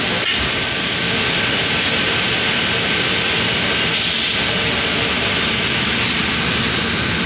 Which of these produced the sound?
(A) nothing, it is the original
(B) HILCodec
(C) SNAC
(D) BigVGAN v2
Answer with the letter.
A